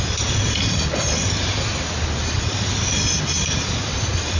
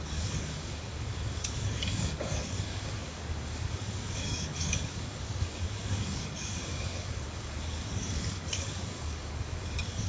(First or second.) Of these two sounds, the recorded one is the first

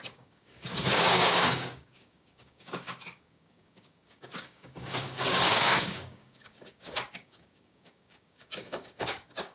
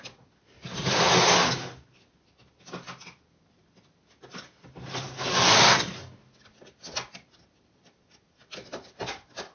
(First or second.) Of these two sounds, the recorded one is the second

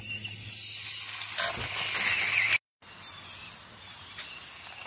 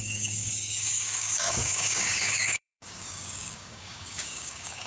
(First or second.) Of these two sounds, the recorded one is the first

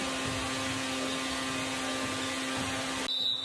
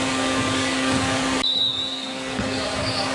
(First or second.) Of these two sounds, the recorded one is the first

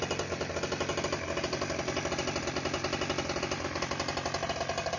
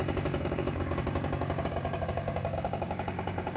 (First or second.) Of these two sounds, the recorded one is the first